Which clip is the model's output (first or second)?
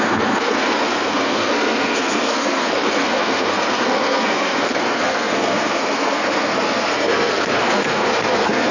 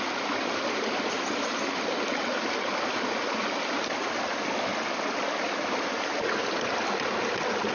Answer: first